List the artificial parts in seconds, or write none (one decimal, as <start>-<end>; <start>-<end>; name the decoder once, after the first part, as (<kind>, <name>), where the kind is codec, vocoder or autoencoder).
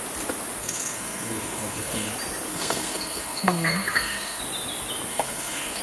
0.6-2.1 (codec, SNAC); 2.5-4.4; 5.1-5.8